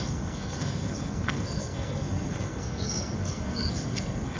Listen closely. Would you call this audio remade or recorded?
remade